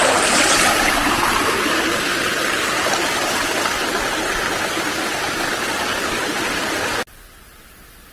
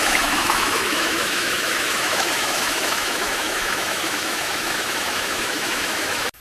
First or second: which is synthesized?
second